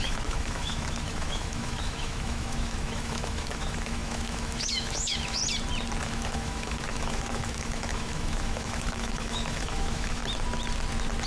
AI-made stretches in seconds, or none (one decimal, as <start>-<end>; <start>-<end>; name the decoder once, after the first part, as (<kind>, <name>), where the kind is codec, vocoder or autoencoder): 0.0-5.4 (autoencoder, DAC-VAE); 6.0-10.2